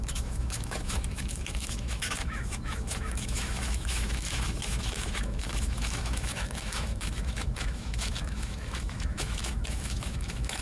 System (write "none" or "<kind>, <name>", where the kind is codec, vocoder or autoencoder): autoencoder, DAC-VAE